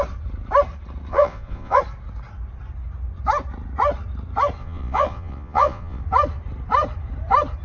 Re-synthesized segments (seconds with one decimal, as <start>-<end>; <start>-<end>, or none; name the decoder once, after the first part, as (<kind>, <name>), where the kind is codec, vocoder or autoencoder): 1.1-1.8 (vocoder, Vocos); 4.6-6.0